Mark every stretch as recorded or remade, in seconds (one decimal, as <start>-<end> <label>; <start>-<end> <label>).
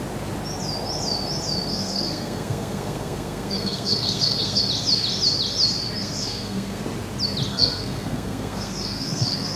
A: 0.0-1.7 recorded; 1.7-4.6 remade; 4.6-6.0 recorded; 6.0-6.8 remade; 6.8-7.5 recorded; 7.5-9.6 remade